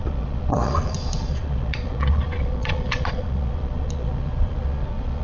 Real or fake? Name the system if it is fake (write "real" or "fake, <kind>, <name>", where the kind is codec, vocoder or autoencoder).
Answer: fake, vocoder, Vocos